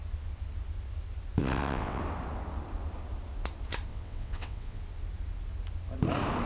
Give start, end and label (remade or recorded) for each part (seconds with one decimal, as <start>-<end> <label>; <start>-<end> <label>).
0.0-1.4 recorded; 1.4-2.0 remade; 2.0-3.9 recorded; 3.9-4.8 remade; 4.8-6.5 recorded